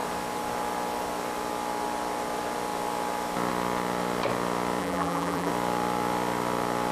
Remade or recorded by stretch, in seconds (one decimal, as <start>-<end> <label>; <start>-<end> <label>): 0.0-4.8 recorded; 4.8-5.5 remade; 5.5-6.9 recorded